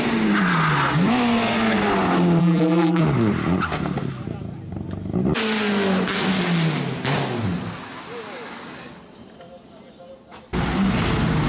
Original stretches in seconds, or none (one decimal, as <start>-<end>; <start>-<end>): 0.0-2.4; 3.0-11.5